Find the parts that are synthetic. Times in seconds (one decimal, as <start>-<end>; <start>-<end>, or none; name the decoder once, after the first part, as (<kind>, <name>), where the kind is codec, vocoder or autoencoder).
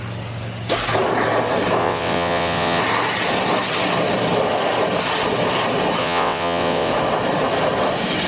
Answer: 1.8-2.8 (vocoder, WaveNeXt); 6.0-6.9